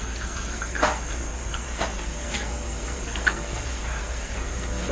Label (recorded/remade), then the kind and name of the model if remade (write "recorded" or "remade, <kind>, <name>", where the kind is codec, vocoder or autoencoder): remade, codec, SNAC